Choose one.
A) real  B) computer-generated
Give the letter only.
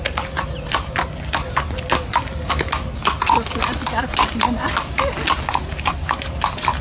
A